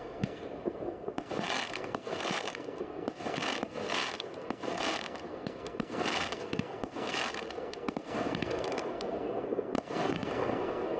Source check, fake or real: fake